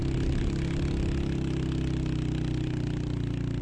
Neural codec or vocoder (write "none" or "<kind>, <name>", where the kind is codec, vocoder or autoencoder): none